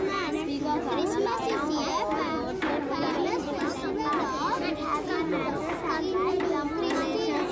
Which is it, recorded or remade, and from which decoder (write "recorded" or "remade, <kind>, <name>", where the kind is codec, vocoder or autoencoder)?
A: recorded